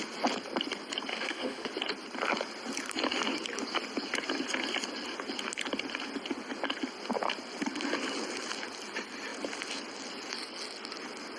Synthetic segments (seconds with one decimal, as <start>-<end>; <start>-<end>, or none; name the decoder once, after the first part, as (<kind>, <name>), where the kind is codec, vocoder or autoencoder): 1.1-1.7 (autoencoder, DAC-VAE)